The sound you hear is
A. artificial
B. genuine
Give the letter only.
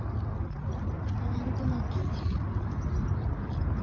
B